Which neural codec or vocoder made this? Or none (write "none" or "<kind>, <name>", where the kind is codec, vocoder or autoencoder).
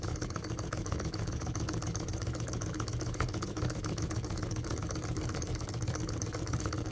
codec, DAC